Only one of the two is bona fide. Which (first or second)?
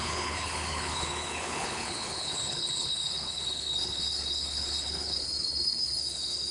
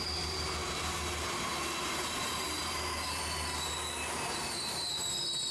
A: second